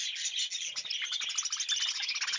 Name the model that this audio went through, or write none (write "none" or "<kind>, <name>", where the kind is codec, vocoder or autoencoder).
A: none